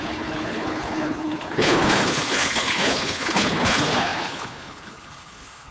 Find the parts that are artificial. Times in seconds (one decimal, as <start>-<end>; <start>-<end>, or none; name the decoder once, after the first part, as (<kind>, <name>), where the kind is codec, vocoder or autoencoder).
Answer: 0.0-5.7 (codec, HILCodec)

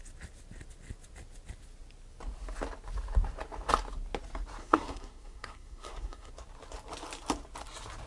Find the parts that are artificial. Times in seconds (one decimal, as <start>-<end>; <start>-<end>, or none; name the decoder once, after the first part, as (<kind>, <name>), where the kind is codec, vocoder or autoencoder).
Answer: 4.6-6.3 (codec, SNAC)

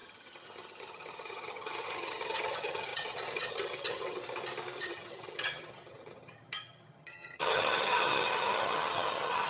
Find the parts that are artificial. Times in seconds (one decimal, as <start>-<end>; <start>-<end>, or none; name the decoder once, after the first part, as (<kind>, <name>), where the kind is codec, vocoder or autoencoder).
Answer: 0.0-4.2 (vocoder, HiFi-GAN); 4.8-9.5

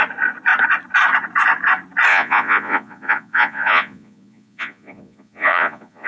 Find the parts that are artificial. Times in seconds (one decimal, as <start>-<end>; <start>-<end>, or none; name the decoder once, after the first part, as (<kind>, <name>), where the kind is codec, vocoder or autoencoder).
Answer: 2.1-6.1 (vocoder, Vocos)

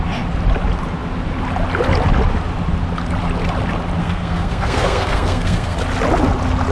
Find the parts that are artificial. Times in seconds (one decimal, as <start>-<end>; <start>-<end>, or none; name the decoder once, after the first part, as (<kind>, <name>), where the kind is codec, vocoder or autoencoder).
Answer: 4.0-5.8 (codec, SNAC)

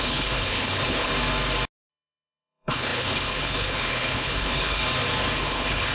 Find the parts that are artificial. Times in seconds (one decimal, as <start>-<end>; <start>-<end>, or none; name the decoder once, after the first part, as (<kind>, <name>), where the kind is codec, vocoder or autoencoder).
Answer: 0.0-1.1 (codec, HILCodec); 1.9-4.8; 5.4-5.9

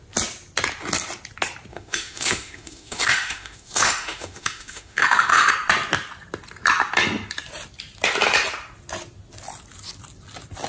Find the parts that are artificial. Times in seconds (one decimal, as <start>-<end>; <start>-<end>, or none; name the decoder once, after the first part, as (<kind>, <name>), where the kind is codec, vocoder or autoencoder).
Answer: 1.7-5.5 (autoencoder, DAC-VAE)

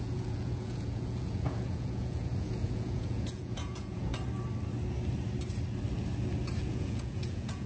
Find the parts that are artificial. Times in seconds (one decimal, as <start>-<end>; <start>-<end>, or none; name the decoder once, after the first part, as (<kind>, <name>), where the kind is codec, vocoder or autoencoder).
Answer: 0.0-4.1 (vocoder, Vocos); 6.6-7.7